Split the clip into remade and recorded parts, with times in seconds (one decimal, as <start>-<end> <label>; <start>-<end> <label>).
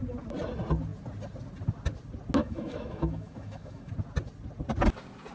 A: 0.0-2.4 recorded; 2.4-3.9 remade; 3.9-5.3 recorded